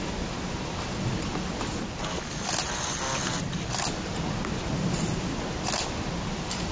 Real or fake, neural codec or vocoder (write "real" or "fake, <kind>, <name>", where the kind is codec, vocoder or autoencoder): real